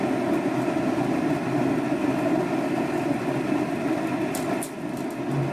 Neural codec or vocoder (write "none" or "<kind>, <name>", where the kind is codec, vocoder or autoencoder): none